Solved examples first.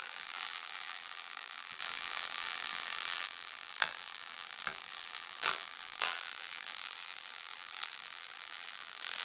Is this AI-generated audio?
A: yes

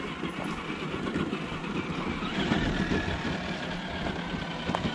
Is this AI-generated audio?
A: no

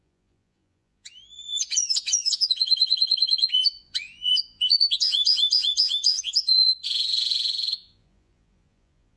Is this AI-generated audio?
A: yes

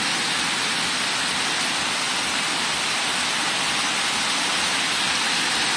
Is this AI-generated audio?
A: no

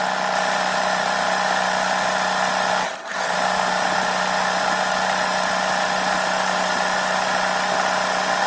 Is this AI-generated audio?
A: no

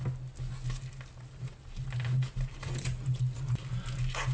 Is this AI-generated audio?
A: no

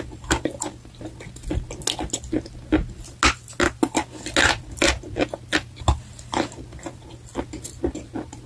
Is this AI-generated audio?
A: no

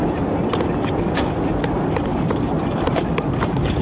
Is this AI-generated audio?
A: no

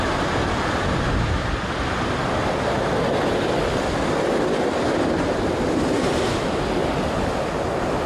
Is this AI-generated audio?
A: no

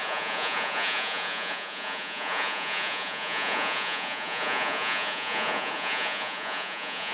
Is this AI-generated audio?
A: yes